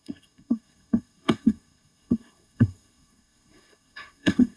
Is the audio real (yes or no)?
no